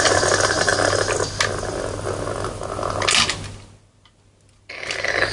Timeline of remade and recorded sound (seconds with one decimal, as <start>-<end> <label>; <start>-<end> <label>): 0.0-5.3 recorded